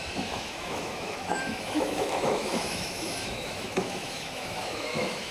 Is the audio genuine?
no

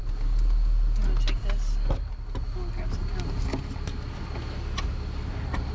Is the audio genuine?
yes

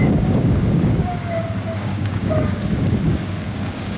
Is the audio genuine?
no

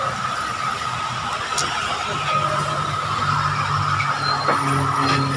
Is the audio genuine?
yes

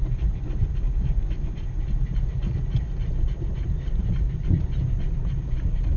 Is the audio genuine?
yes